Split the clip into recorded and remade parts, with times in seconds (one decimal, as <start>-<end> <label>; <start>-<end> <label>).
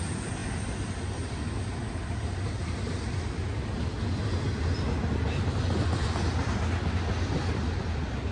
0.0-8.3 recorded